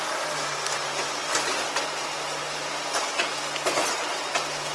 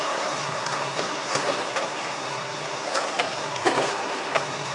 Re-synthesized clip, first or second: second